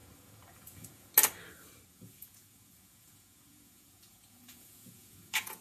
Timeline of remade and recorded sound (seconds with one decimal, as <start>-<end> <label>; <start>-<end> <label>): 0.0-1.1 remade; 1.1-1.9 recorded; 1.9-5.6 remade